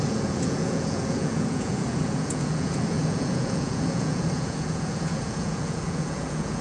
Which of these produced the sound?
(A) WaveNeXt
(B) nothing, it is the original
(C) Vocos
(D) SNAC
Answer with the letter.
C